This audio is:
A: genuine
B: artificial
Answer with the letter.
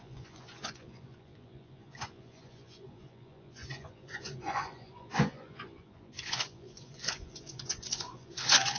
B